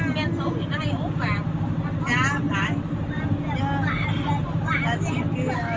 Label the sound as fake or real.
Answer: real